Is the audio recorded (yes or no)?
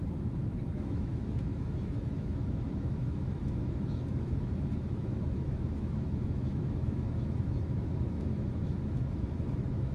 no